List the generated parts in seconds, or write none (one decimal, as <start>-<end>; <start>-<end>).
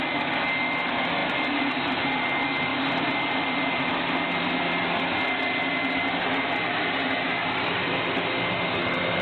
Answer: none